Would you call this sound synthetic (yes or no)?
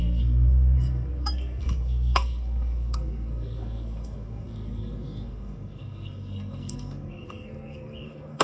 yes